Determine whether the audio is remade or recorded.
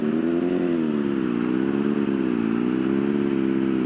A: recorded